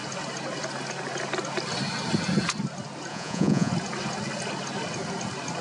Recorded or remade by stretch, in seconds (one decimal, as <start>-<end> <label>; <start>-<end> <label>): 0.0-3.1 recorded; 3.1-3.7 remade; 3.7-5.6 recorded